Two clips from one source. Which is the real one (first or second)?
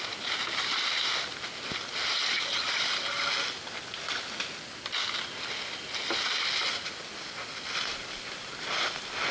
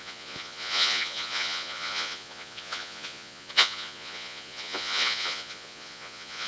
first